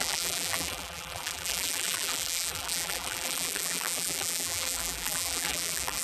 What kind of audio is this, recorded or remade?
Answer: remade